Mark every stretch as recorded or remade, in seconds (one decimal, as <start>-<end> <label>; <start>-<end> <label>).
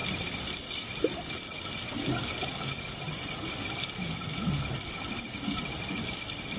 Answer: 0.0-1.4 remade; 1.4-6.6 recorded